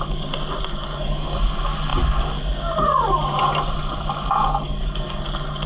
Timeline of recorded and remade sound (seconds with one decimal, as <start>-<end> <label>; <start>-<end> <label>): 0.0-0.8 recorded; 0.8-1.4 remade; 1.4-4.4 recorded; 4.4-5.2 remade; 5.2-5.7 recorded